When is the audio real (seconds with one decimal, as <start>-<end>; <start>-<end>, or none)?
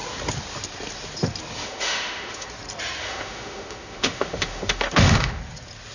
0.0-1.6; 2.5-3.0; 5.4-5.9